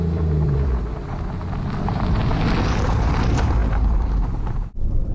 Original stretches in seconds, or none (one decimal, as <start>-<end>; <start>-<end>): 1.1-1.8; 2.2-2.8